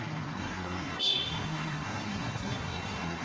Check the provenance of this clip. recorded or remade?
remade